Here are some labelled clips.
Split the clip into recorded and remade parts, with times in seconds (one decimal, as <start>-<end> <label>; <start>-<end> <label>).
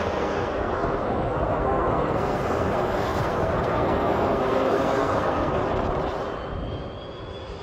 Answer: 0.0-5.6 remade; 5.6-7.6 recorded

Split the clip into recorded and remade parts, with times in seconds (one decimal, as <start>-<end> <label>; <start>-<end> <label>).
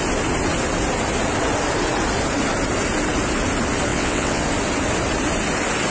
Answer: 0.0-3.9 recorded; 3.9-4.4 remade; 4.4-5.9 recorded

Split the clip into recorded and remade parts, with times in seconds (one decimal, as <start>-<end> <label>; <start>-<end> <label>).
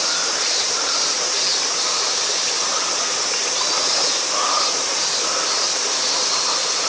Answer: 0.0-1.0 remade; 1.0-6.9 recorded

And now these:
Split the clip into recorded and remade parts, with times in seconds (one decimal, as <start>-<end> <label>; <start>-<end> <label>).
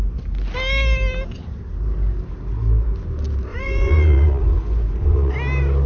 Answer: 0.0-3.5 recorded; 3.5-5.3 remade; 5.3-5.9 recorded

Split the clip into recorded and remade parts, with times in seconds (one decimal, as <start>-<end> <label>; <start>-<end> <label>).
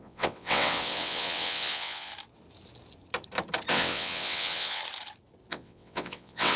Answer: 0.0-2.1 remade; 2.1-3.7 recorded; 3.7-4.8 remade; 4.8-5.5 recorded; 5.5-6.6 remade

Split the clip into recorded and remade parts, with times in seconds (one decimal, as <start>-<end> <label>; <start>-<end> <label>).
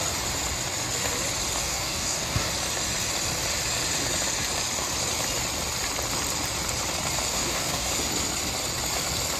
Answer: 0.0-1.6 recorded; 1.6-2.5 remade; 2.5-7.3 recorded; 7.3-7.9 remade; 7.9-9.4 recorded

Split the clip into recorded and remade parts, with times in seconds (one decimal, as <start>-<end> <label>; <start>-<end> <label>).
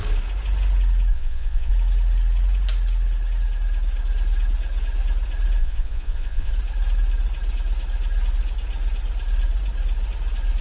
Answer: 0.0-1.1 recorded; 1.1-1.7 remade; 1.7-5.6 recorded; 5.6-6.5 remade; 6.5-10.6 recorded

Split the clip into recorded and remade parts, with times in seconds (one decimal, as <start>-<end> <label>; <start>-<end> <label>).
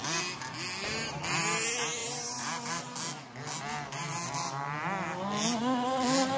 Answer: 0.0-6.4 recorded